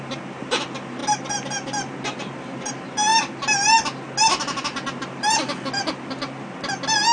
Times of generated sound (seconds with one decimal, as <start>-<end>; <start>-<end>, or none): none